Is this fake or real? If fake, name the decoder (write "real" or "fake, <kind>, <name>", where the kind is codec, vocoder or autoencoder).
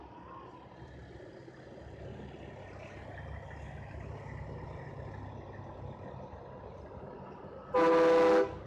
real